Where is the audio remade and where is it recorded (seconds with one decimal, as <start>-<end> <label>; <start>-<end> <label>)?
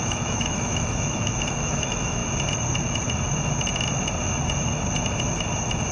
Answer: 0.0-2.2 remade; 2.2-5.9 recorded